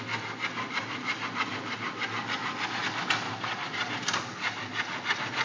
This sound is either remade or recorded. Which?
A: recorded